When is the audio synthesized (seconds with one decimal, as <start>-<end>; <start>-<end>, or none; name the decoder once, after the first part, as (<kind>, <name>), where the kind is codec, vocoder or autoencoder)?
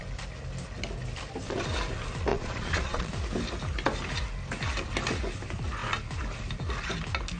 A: 2.3-3.1 (vocoder, Vocos)